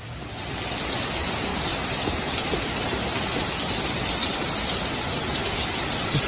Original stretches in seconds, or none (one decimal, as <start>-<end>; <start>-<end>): 0.0-1.5; 2.4-4.2